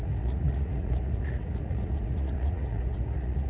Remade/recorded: remade